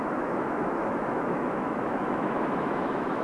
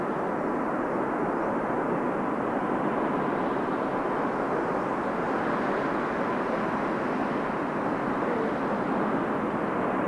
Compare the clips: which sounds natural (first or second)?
second